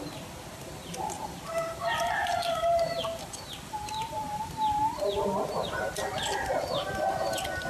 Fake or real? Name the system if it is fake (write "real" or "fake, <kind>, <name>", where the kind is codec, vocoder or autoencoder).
real